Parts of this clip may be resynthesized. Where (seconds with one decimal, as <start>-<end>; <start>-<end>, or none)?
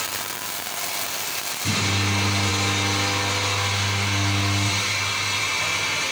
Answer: none